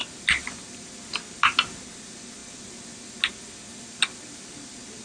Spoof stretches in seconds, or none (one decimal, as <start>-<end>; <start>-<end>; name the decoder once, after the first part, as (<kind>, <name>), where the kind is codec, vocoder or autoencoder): none